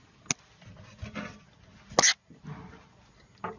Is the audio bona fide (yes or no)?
yes